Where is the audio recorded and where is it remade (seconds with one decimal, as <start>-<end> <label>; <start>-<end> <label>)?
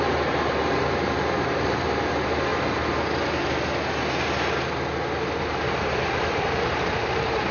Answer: 0.0-2.5 remade; 2.5-5.4 recorded; 5.4-7.5 remade